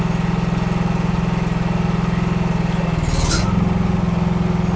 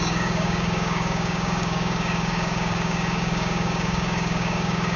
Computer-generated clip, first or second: second